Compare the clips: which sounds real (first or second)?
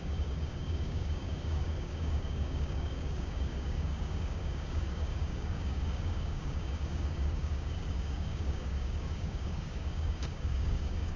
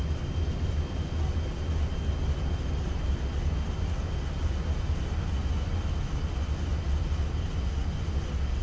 second